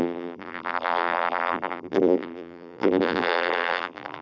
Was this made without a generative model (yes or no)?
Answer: no